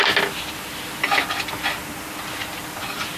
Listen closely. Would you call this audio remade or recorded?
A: recorded